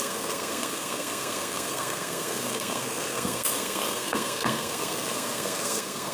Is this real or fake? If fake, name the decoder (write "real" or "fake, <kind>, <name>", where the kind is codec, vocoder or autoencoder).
fake, codec, SNAC